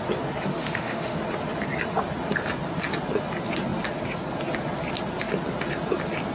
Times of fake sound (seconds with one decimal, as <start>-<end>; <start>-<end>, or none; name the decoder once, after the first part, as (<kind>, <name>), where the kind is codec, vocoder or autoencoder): 0.5-1.2 (autoencoder, DAC-VAE)